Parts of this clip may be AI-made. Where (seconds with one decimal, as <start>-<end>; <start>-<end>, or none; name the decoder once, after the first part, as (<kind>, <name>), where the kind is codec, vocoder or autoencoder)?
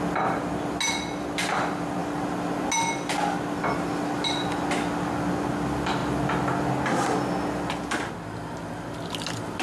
none